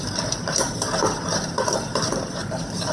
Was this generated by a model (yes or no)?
yes